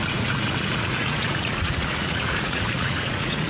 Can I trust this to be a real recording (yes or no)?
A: no